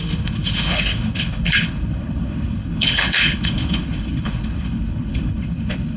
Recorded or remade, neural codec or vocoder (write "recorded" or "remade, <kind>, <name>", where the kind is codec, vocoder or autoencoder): remade, codec, HILCodec